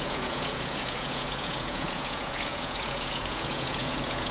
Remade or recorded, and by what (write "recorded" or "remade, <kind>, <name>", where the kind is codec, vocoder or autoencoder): remade, vocoder, Vocos